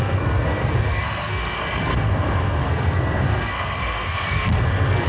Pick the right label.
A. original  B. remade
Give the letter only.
B